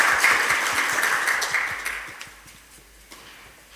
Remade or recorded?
recorded